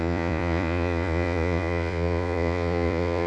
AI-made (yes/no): yes